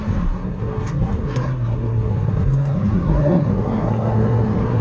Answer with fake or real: fake